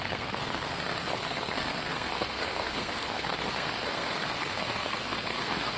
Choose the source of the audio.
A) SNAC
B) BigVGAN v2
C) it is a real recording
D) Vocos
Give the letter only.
A